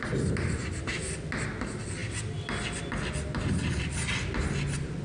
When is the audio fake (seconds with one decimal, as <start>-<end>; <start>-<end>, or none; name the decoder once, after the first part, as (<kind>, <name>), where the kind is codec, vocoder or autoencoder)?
none